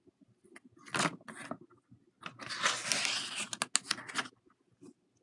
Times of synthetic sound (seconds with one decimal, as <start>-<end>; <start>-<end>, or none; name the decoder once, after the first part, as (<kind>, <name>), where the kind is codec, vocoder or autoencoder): none